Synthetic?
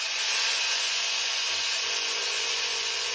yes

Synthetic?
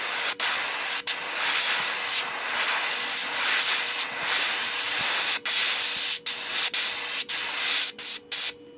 no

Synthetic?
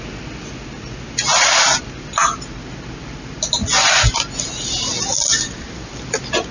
no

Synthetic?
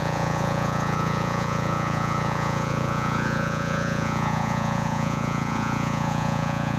yes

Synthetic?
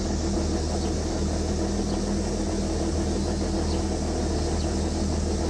no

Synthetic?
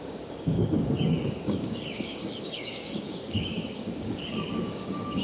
yes